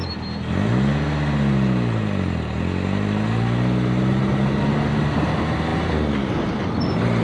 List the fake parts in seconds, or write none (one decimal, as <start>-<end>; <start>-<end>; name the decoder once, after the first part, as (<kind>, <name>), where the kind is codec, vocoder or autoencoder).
none